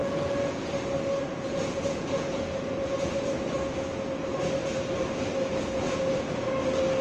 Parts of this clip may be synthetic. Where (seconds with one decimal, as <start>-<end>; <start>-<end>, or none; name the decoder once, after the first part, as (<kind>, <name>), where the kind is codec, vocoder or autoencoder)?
0.0-0.7 (vocoder, Vocos); 1.3-3.3; 5.3-6.5